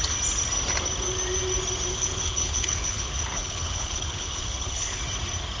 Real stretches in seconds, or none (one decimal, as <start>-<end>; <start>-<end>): 0.0-1.9; 5.0-5.6